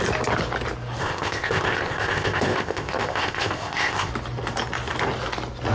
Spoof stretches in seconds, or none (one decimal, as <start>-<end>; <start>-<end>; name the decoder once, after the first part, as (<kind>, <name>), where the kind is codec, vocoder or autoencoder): 1.0-4.1 (codec, ZipCodec)

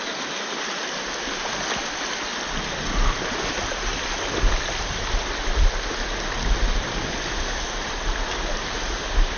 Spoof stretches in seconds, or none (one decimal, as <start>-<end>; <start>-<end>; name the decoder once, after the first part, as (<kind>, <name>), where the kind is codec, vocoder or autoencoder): none